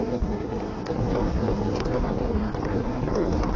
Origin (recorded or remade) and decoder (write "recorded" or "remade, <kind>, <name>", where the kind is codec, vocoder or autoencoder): remade, codec, SNAC